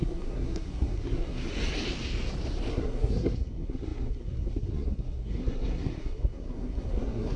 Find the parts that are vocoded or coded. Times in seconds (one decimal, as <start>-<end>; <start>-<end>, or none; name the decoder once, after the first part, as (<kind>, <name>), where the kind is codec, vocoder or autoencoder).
0.0-1.5 (codec, SNAC); 2.7-7.4